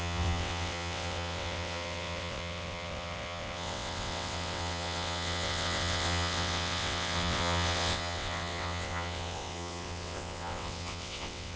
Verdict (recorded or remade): remade